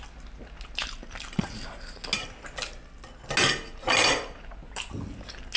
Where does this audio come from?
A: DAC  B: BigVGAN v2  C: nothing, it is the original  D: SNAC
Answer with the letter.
C